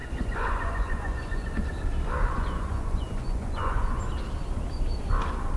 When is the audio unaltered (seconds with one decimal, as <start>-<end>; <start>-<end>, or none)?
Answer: 1.5-2.2; 4.0-5.6